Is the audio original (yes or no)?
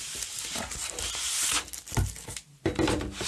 yes